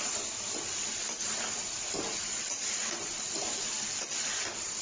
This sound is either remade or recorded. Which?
remade